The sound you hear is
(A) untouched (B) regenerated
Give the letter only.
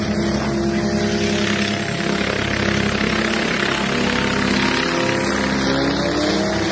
A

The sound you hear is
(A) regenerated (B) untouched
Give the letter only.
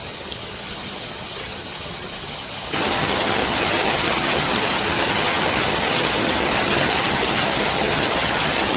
A